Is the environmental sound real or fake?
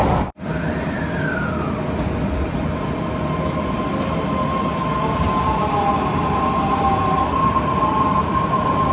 real